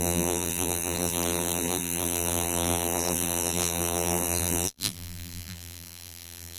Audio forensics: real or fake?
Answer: fake